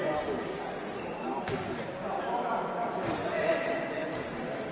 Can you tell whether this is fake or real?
real